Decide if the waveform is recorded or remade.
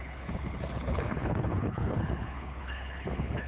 remade